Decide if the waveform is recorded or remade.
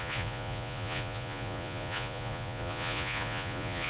remade